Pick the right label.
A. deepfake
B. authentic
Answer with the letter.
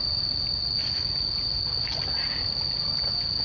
B